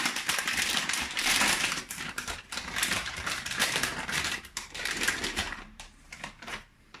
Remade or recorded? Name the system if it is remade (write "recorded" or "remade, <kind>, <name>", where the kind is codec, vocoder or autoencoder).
remade, vocoder, BigVGAN v2